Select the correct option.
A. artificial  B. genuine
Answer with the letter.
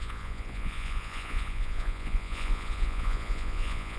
A